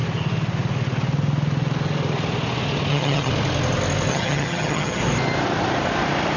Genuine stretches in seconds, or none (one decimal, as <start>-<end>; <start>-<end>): 0.0-2.9; 3.3-4.1; 5.0-6.4

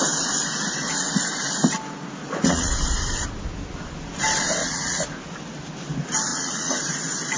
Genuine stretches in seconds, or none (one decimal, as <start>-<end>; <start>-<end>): 0.0-2.2; 2.7-4.6; 5.2-6.3; 6.8-7.4

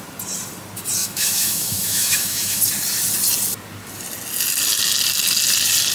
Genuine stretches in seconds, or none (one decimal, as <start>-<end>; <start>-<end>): 0.0-1.0; 2.6-5.9

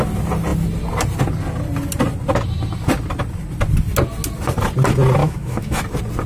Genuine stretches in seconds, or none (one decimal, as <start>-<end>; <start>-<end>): 0.0-5.2; 5.8-6.3